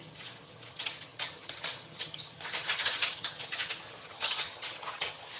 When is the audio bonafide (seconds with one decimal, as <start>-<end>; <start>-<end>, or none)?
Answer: none